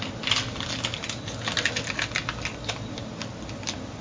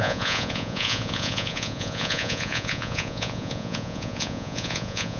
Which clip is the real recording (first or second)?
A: first